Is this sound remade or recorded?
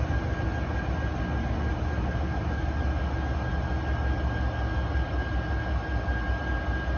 recorded